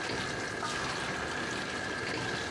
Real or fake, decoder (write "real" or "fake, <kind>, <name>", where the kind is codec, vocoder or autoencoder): real